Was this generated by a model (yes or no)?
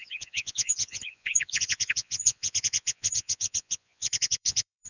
yes